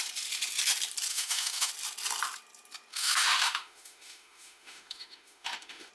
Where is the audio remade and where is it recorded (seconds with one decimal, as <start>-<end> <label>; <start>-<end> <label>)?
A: 0.0-1.1 recorded; 1.1-1.7 remade; 1.7-2.9 recorded; 2.9-5.9 remade